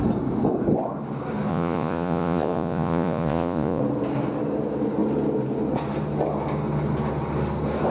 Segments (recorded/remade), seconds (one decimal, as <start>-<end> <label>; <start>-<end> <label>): 0.0-1.5 recorded; 1.5-3.8 remade; 3.8-7.9 recorded

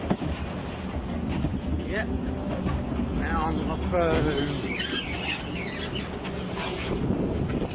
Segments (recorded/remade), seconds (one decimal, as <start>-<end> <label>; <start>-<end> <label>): 0.0-7.7 recorded

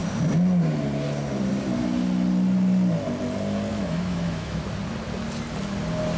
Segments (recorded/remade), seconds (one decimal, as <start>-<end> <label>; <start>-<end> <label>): 0.0-3.7 recorded; 3.7-4.6 remade; 4.6-6.2 recorded

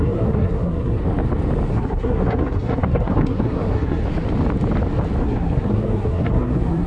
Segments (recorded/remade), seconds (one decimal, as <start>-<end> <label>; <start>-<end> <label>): 0.0-1.0 remade; 1.0-1.7 recorded; 1.7-4.0 remade; 4.0-5.2 recorded; 5.2-6.9 remade